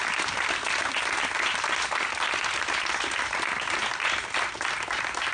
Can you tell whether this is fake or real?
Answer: real